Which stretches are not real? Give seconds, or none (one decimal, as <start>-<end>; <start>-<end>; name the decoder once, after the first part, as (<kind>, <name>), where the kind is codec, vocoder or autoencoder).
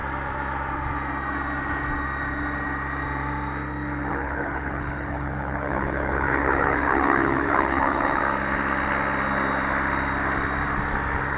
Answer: 4.1-8.2 (codec, HILCodec)